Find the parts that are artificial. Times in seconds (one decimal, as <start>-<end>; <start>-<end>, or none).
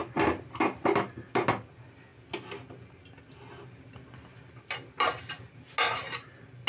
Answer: none